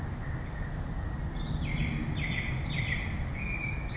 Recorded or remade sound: recorded